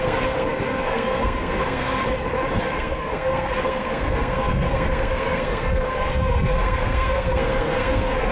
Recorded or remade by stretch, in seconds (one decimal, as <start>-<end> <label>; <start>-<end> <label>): 0.0-2.0 remade; 2.0-2.6 recorded; 2.6-8.3 remade